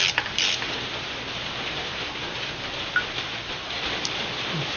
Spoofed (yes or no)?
no